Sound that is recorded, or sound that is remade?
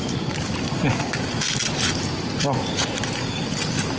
recorded